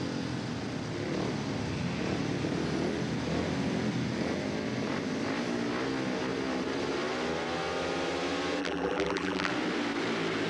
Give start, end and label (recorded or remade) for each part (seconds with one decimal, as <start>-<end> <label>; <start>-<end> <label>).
0.0-8.6 recorded; 8.6-9.5 remade; 9.5-10.5 recorded